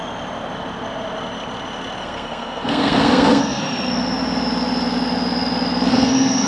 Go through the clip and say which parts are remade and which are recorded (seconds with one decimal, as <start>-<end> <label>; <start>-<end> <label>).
0.0-2.0 recorded; 2.0-3.6 remade; 3.6-5.9 recorded; 5.9-6.5 remade

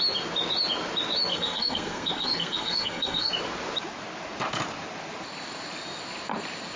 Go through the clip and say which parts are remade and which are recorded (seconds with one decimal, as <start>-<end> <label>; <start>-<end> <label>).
0.0-1.3 recorded; 1.3-3.3 remade; 3.3-6.8 recorded

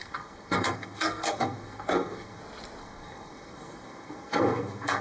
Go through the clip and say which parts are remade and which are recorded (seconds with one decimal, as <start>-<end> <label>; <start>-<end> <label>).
0.0-2.4 remade; 2.4-2.8 recorded; 2.8-5.0 remade

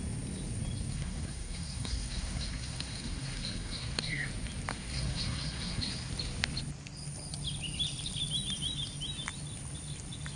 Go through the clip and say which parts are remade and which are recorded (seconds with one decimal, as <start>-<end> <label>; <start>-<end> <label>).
0.0-0.9 recorded; 0.9-4.3 remade; 4.3-4.7 recorded; 4.7-6.1 remade; 6.1-10.4 recorded

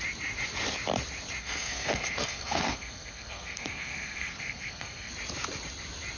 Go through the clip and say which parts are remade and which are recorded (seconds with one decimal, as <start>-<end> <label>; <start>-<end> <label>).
0.0-1.4 recorded; 1.4-5.1 remade; 5.1-6.2 recorded

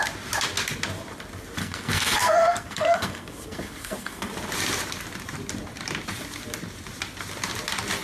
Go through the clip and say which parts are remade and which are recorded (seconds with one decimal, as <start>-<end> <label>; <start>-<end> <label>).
0.0-1.6 recorded; 1.6-4.3 remade; 4.3-8.0 recorded

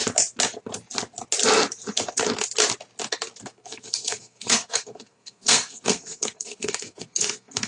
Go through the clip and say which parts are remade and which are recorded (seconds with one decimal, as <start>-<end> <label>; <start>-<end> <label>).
0.0-3.6 recorded; 3.6-7.7 remade

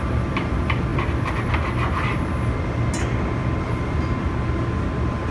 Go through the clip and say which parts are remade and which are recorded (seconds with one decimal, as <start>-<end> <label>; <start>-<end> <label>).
0.0-5.3 recorded